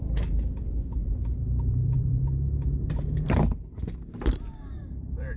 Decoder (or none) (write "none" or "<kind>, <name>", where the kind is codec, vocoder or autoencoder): vocoder, BigVGAN v2